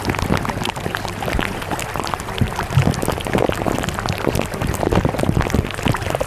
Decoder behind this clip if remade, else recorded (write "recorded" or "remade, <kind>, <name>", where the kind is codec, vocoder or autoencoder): recorded